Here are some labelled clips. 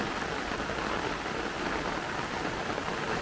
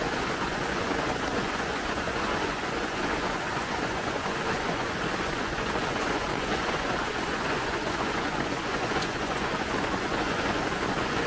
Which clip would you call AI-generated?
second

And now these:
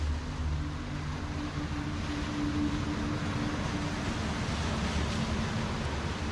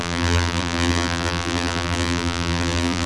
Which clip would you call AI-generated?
second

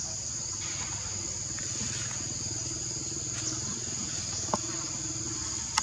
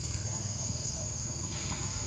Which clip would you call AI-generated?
second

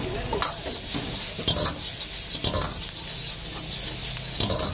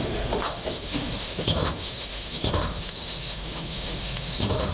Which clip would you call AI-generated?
second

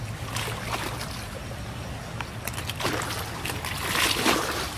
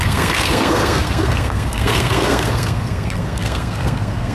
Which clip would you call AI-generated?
second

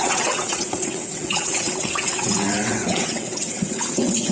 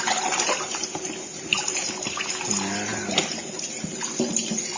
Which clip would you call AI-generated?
first